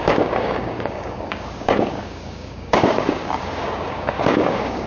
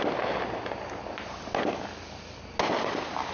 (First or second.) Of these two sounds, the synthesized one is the first